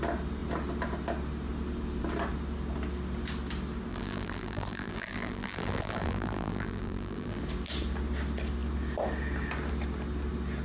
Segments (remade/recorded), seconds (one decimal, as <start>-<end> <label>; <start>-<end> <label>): 0.0-3.9 recorded; 3.9-7.4 remade; 7.4-10.6 recorded